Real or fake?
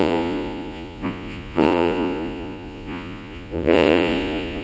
fake